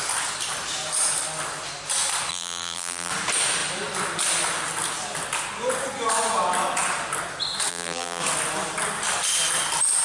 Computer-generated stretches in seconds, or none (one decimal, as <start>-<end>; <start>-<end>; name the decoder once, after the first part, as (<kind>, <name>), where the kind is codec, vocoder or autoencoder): 2.3-3.1 (vocoder, BigVGAN v2); 7.7-8.2